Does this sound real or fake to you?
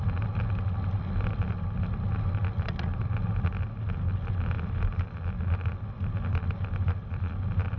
real